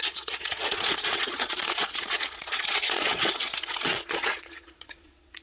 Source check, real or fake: fake